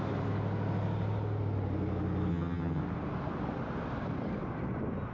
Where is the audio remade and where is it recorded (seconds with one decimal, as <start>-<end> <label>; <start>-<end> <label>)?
0.0-2.3 recorded; 2.3-2.8 remade; 2.8-5.1 recorded